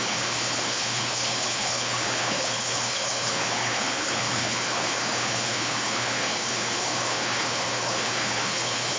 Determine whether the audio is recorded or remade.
remade